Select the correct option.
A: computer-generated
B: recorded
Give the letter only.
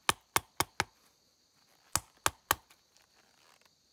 B